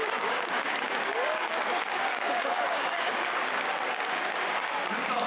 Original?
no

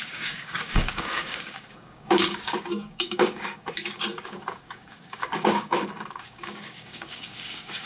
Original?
no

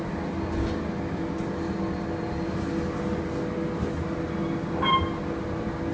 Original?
yes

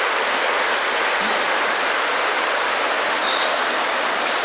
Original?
yes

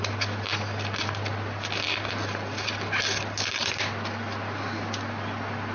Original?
yes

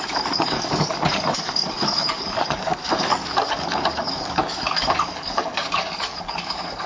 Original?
no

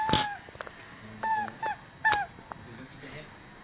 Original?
yes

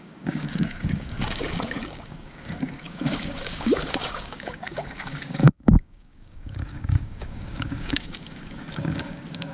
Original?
no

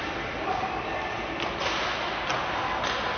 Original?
yes